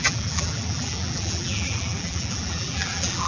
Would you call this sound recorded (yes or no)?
no